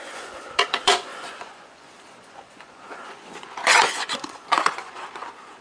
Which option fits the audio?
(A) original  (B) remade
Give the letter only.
B